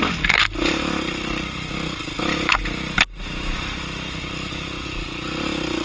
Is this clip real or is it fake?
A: real